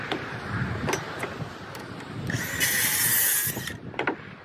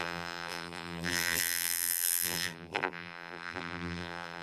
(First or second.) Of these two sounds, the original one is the first